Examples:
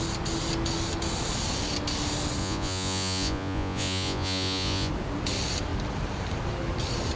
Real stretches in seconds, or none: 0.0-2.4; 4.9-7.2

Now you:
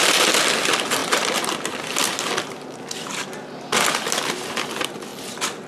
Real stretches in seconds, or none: 0.0-5.7

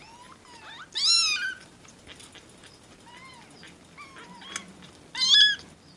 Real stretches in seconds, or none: 0.0-6.0

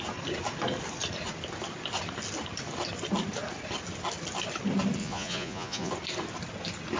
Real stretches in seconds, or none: 0.0-5.0; 5.9-7.0